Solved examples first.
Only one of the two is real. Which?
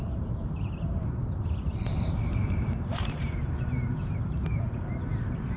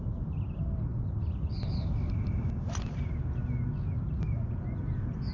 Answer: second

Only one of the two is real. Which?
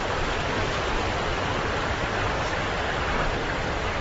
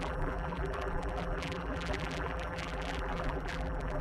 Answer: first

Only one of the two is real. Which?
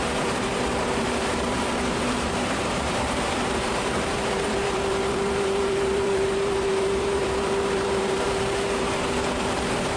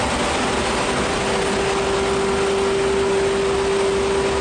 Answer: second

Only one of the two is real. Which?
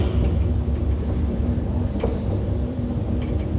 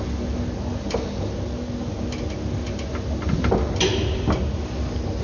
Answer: second